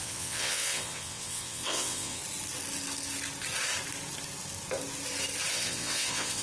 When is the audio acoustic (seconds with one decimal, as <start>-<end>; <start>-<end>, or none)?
2.2-5.5